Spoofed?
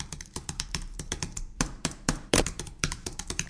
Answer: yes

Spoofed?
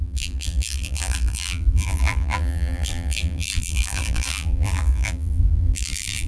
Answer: yes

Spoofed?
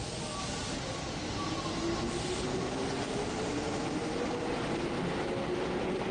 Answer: no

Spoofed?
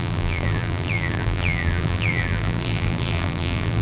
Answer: yes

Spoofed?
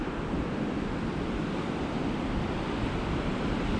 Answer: no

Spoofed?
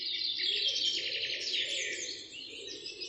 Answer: yes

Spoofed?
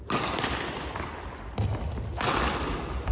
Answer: no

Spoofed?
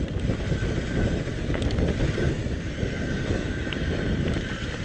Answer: no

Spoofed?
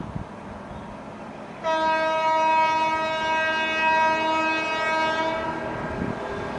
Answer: no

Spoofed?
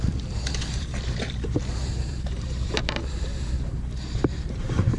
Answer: yes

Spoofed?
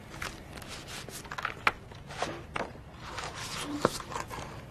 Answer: no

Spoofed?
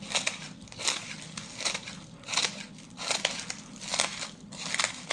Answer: no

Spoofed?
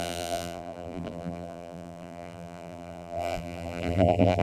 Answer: yes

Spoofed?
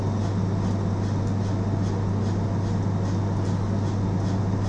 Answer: no